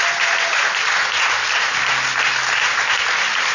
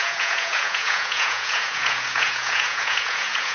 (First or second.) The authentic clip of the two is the first